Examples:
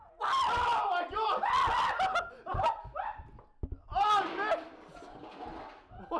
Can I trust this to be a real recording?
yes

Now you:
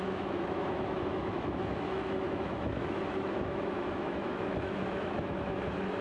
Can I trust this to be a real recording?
no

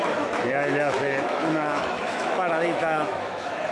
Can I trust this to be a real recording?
no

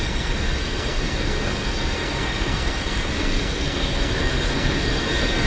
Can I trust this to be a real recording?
no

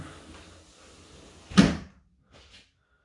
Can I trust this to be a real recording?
yes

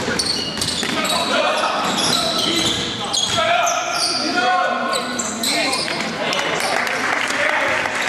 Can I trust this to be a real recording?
yes